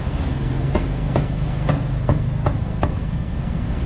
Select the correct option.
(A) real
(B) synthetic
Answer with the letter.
B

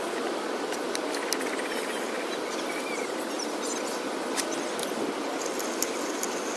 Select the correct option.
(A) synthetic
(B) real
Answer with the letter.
B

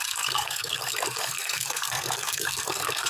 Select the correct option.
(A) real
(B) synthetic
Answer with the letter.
B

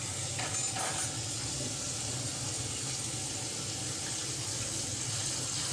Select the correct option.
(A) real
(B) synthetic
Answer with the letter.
A